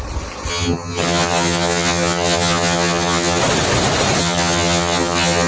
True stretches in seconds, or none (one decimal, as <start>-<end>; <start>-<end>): 0.0-0.5; 3.4-4.2